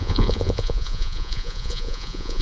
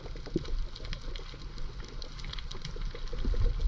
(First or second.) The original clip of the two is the second